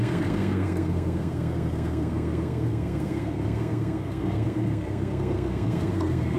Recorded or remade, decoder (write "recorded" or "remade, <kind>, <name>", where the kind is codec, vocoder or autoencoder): remade, codec, SNAC